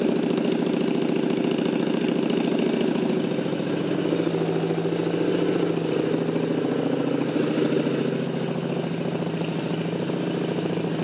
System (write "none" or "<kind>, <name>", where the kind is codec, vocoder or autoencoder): none